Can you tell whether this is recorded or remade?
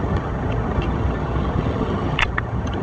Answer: remade